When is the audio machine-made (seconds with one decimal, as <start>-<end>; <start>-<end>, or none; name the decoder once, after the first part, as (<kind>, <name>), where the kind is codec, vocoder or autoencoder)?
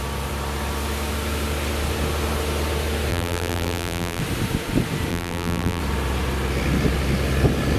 3.1-4.2 (vocoder, BigVGAN v2); 5.1-5.8